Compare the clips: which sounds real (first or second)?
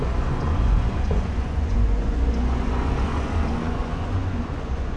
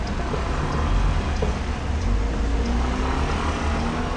second